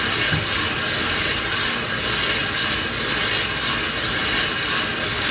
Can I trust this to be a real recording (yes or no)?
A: yes